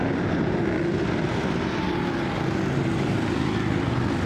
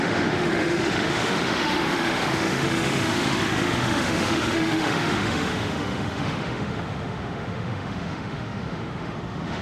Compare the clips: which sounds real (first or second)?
first